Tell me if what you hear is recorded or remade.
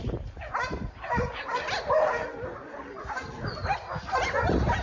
recorded